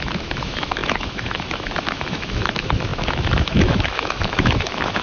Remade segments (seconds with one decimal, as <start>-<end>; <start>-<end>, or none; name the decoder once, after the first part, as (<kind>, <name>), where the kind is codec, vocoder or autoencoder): 0.0-5.0 (autoencoder, DAC-VAE)